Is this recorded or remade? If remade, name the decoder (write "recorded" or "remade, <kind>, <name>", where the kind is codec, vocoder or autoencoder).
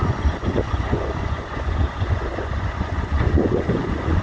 remade, vocoder, Vocos